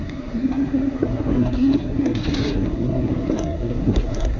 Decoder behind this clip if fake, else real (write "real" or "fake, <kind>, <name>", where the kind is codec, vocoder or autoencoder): fake, codec, SNAC